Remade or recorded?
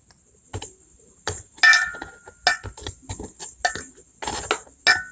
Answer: recorded